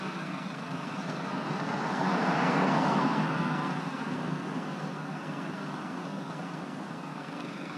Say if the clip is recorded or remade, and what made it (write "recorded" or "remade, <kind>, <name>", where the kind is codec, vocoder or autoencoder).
remade, codec, SNAC